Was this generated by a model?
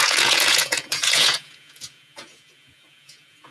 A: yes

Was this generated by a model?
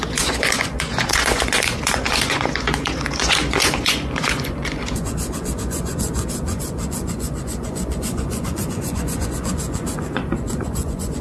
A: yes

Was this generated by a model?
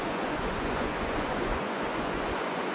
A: yes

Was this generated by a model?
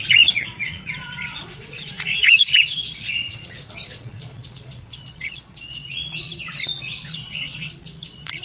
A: yes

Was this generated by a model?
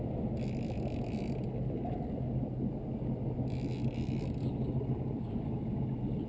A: no